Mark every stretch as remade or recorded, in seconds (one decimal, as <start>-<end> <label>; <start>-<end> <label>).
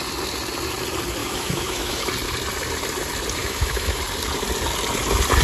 0.0-1.2 recorded; 1.2-2.1 remade; 2.1-3.4 recorded; 3.4-4.0 remade; 4.0-5.4 recorded